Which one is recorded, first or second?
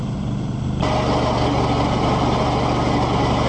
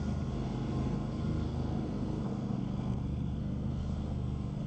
first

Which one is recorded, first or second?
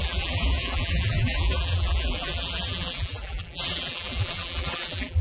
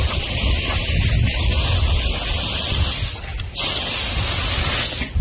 second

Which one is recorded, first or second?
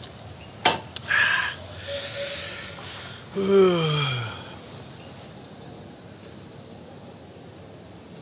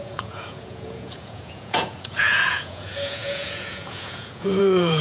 first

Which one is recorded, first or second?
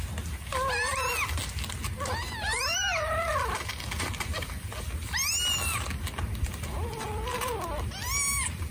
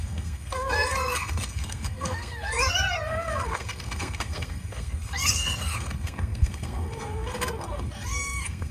first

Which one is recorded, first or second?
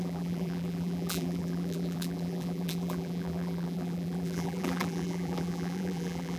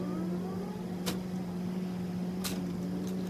second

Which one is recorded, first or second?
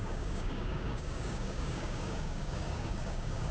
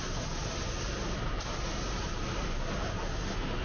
second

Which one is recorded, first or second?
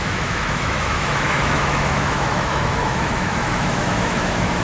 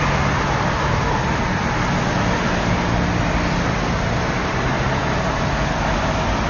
second